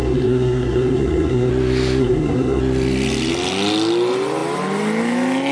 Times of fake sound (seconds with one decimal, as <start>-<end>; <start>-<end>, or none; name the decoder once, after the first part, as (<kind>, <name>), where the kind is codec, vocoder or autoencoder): 0.0-1.5 (codec, SNAC); 2.0-2.6